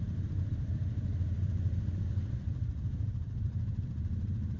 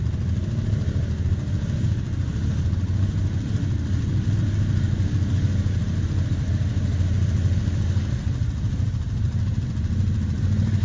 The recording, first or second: second